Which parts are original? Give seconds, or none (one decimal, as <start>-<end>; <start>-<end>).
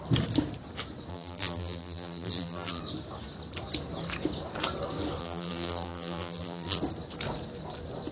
0.0-1.1; 2.8-5.2; 6.8-8.1